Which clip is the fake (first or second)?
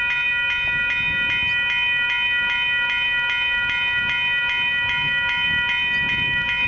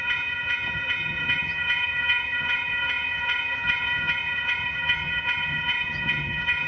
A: second